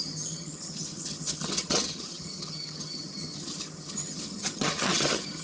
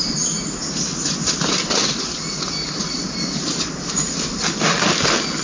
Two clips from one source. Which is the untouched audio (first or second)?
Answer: second